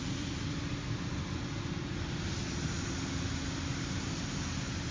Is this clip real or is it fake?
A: real